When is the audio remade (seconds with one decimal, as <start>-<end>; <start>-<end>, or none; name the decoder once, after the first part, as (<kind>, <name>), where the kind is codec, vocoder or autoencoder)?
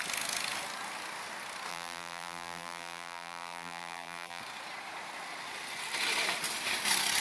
1.7-4.4 (vocoder, BigVGAN v2)